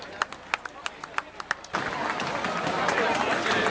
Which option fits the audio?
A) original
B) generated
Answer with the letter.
A